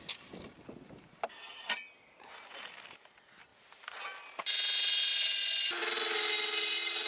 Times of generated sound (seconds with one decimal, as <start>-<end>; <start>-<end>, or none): none